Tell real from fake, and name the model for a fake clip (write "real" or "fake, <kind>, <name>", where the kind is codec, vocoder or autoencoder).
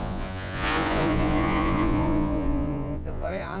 fake, vocoder, Vocos